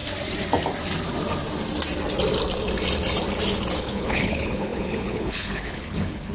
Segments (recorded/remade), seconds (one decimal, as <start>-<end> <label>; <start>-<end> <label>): 0.0-3.8 recorded; 3.8-6.3 remade